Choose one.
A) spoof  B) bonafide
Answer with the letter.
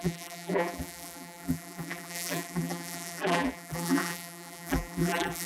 A